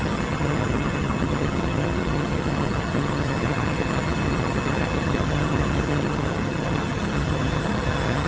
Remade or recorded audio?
remade